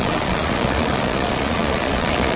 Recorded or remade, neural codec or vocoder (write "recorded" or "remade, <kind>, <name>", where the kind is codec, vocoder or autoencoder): remade, vocoder, Vocos